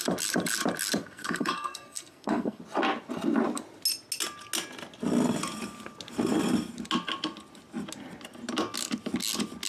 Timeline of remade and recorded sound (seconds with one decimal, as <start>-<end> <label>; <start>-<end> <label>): 0.0-1.0 recorded; 1.0-2.6 remade; 2.6-9.7 recorded